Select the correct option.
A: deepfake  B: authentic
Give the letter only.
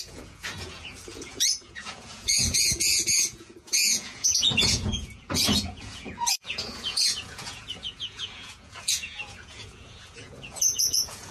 A